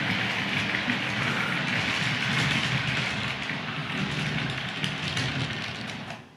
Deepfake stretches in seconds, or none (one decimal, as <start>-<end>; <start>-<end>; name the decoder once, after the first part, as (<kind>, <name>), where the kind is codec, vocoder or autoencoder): none